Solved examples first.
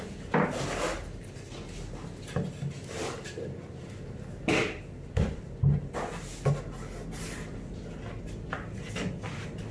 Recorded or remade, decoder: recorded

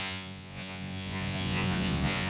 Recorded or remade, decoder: remade, vocoder, Vocos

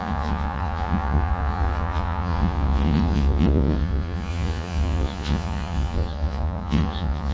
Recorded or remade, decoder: remade, vocoder, Vocos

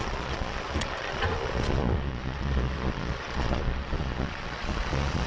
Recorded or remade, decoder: remade, vocoder, Vocos